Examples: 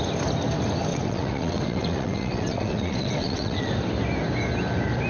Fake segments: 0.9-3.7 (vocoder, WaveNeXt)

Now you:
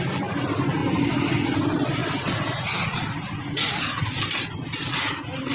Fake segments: none

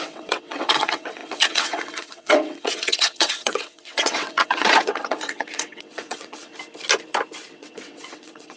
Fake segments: 0.0-6.5 (vocoder, WaveNeXt); 7.5-8.6

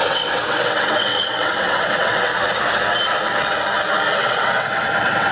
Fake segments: 0.0-2.3 (vocoder, WaveNeXt); 4.2-5.3

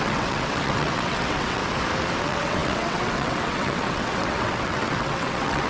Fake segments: 0.0-1.6 (vocoder, WaveNeXt); 2.2-5.7